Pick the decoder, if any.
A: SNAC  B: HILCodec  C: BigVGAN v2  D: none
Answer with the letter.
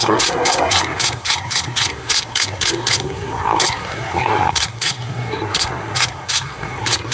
A